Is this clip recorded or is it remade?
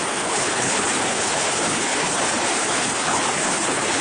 remade